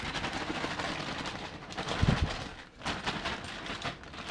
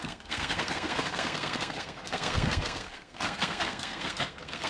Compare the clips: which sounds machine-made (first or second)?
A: second